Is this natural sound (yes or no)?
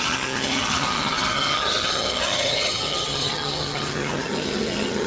no